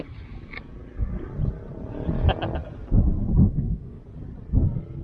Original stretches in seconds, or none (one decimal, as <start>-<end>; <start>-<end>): 0.0-3.4; 4.0-5.0